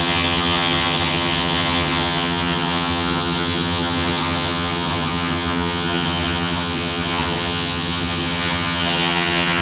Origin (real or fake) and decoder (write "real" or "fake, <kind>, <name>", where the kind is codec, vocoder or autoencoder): fake, vocoder, HiFi-GAN